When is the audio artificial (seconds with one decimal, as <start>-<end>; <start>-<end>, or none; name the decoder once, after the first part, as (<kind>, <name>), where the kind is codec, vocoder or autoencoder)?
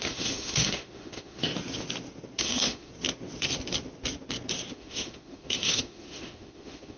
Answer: 0.0-1.5 (autoencoder, DAC-VAE); 2.4-2.9; 4.7-7.0